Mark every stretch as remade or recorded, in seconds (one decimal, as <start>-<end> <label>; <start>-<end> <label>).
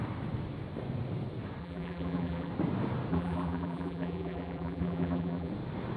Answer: 0.0-1.6 recorded; 1.6-2.5 remade; 2.5-3.1 recorded; 3.1-5.5 remade; 5.5-6.0 recorded